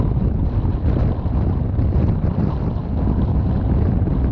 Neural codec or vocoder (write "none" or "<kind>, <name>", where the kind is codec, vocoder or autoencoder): none